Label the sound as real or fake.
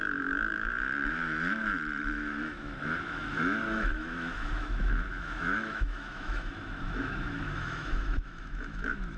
fake